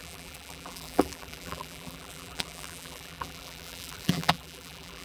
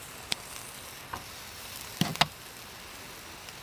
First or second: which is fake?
first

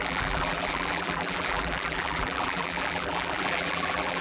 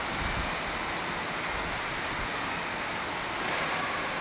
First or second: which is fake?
first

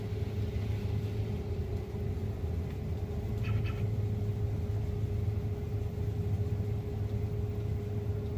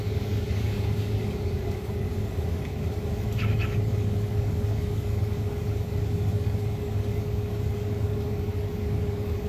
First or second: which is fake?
second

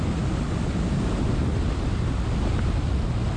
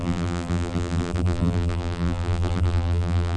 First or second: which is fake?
second